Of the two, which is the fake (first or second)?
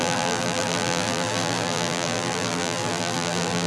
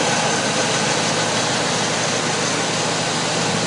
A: first